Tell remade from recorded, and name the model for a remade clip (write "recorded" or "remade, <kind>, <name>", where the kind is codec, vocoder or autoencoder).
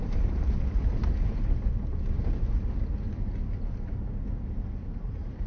recorded